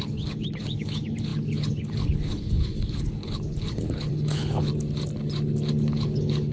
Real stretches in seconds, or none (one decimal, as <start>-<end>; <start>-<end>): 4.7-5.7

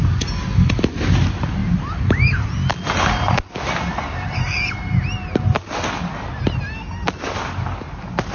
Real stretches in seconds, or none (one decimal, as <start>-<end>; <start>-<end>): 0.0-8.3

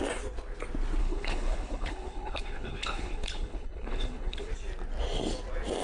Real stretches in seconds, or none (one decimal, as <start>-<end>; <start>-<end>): 0.0-1.0; 4.5-5.8